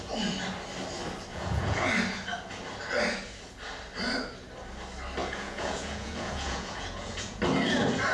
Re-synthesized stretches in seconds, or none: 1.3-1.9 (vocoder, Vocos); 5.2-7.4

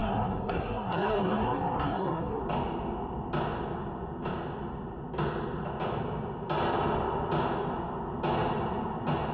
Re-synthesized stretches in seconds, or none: 0.0-2.4 (codec, SNAC)

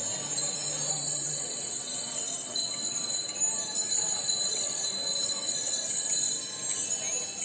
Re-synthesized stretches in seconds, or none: 0.9-3.3 (vocoder, WaveNeXt); 3.9-6.4

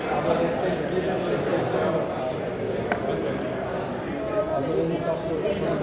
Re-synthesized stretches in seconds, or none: none

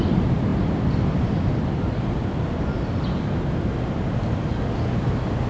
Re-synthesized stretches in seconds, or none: none

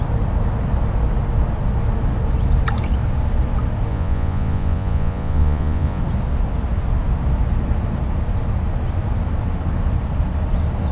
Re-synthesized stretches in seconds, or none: 3.9-6.0 (vocoder, Vocos)

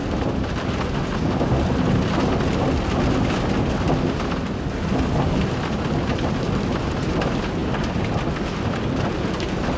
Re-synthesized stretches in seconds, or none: none